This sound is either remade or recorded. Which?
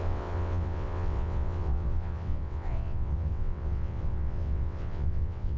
remade